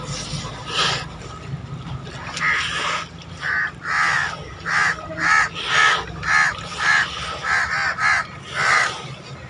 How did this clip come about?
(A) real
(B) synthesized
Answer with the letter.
A